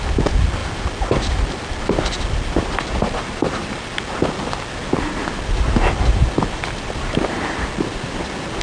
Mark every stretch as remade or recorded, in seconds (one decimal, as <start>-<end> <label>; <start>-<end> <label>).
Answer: 0.0-8.6 recorded